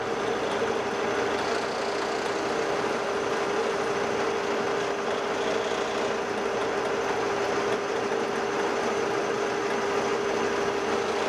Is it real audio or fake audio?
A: real